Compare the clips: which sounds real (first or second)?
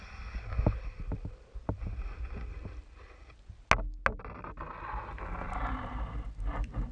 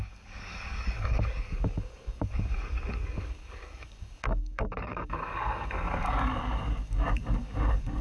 first